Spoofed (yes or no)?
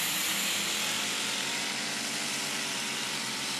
yes